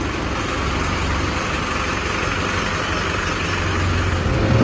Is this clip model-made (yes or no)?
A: no